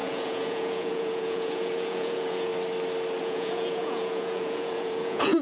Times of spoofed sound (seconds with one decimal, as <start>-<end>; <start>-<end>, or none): 0.0-2.5; 3.2-5.4